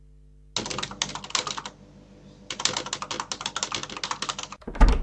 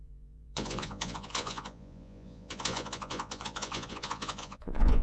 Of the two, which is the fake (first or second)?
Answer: second